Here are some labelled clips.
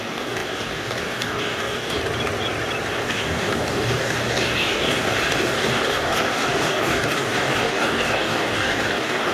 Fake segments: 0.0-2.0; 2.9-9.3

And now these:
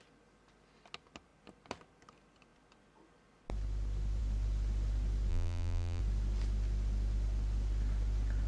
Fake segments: 5.3-6.0

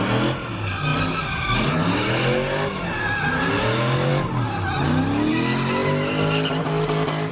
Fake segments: none

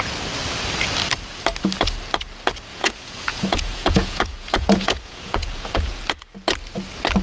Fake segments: 2.7-6.0

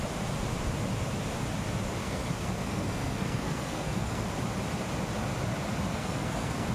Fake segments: 2.0-4.3; 5.9-6.7